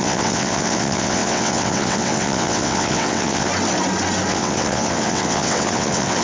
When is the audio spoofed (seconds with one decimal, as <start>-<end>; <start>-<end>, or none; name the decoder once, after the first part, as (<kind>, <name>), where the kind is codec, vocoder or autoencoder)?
0.0-3.5 (vocoder, WaveNeXt); 4.3-6.2